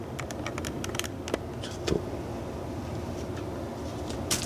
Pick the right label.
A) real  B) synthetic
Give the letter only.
A